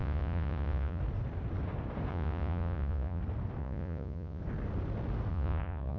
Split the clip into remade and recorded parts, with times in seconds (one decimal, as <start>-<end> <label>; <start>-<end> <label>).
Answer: 0.0-1.0 remade; 1.0-2.1 recorded; 2.1-3.2 remade; 3.2-3.6 recorded; 3.6-4.4 remade; 4.4-5.3 recorded; 5.3-6.0 remade